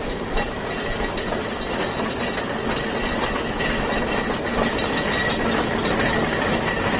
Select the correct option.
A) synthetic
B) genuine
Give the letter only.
B